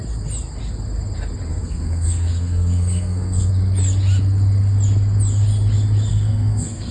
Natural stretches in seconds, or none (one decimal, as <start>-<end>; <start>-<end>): 0.0-1.5; 3.5-6.1